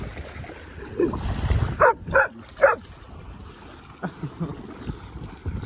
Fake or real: real